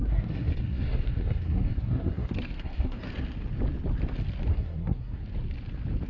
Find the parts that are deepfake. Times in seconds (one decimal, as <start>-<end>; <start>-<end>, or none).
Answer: 0.0-3.1; 4.5-5.2